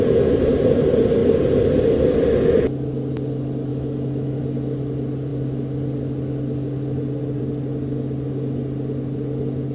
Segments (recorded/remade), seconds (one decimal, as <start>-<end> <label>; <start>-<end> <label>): 0.0-3.7 recorded; 3.7-4.4 remade; 4.4-9.7 recorded